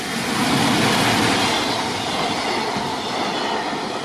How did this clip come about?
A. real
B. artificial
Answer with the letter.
A